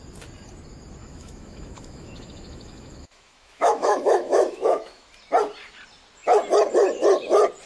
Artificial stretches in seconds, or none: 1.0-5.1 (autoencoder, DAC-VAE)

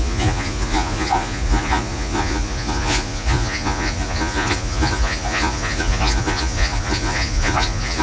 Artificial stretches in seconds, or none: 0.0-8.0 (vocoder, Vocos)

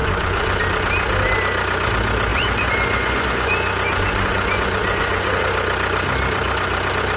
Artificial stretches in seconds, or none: 0.0-0.6 (vocoder, Vocos); 2.3-5.4

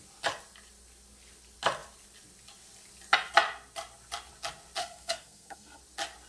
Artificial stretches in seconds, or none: 4.8-5.8 (codec, SNAC)

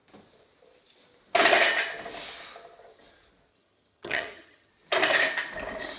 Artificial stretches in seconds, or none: 3.5-4.7 (vocoder, HiFi-GAN)